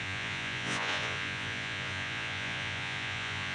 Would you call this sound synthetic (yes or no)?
yes